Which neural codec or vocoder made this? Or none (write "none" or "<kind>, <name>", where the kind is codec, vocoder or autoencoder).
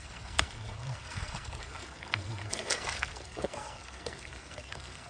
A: codec, SNAC